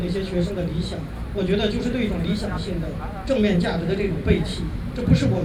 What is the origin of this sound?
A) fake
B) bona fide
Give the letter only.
A